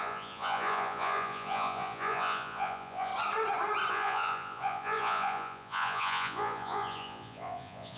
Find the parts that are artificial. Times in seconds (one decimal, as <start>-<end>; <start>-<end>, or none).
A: 0.0-3.1; 3.9-8.0